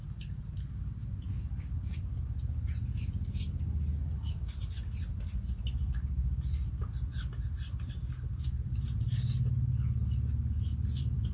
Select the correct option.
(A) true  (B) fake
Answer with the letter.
A